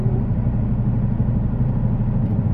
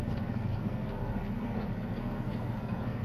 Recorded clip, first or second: first